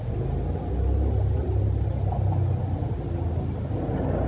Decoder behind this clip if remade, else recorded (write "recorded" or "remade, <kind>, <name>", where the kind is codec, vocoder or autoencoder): recorded